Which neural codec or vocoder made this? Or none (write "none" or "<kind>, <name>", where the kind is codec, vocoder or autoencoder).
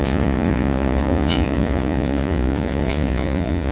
vocoder, Vocos